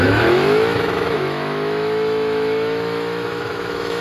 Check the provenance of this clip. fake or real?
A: fake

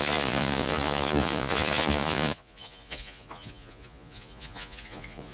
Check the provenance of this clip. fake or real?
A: fake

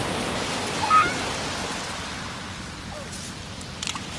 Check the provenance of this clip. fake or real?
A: real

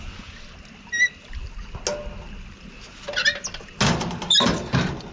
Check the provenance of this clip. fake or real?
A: real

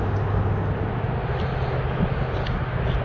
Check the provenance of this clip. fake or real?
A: real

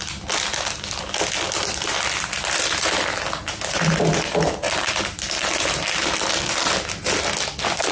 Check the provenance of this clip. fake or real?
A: real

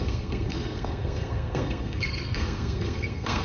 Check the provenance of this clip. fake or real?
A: fake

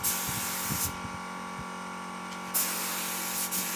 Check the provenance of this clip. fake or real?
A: real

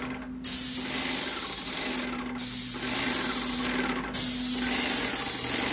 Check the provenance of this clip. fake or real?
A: real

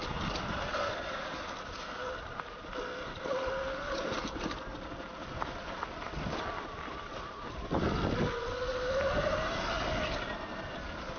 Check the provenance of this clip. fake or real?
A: real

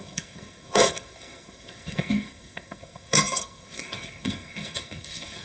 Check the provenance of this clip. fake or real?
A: fake